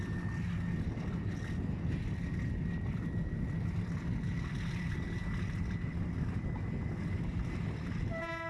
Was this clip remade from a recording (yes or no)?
no